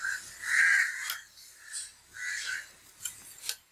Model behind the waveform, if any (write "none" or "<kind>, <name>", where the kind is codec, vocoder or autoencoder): none